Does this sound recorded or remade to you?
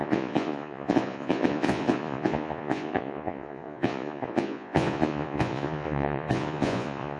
remade